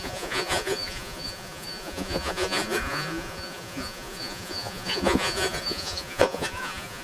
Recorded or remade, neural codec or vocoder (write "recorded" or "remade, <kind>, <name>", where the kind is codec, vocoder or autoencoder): remade, vocoder, Vocos